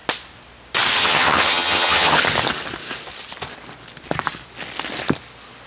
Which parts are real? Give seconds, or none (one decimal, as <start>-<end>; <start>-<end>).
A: 0.0-1.0; 2.2-5.7